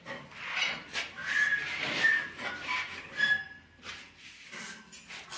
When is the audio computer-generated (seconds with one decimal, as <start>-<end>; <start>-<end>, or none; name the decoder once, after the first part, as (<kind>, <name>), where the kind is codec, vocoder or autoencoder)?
1.2-4.2 (vocoder, BigVGAN v2)